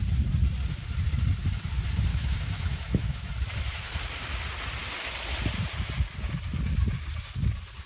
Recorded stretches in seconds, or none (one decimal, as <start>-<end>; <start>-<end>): 0.0-2.1; 3.3-7.9